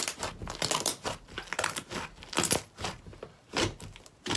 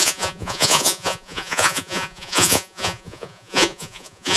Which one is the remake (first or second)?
second